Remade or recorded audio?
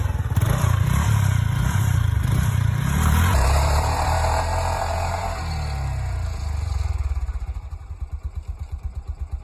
remade